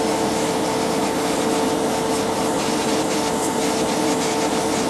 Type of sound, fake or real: real